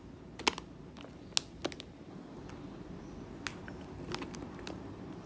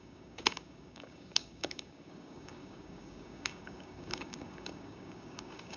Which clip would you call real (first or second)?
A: first